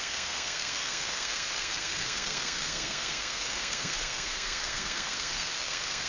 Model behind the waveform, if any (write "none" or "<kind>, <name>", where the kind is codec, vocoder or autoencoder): codec, SNAC